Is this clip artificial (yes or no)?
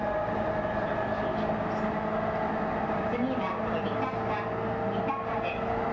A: no